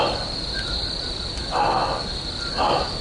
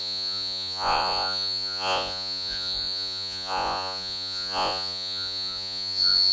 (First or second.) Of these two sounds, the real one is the first